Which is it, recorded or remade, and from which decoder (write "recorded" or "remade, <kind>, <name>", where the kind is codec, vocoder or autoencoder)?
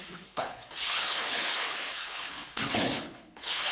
remade, codec, HILCodec